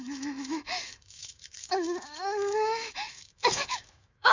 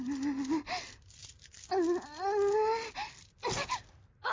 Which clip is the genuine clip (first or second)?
second